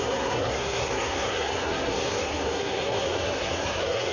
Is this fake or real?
fake